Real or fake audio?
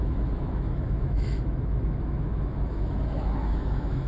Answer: fake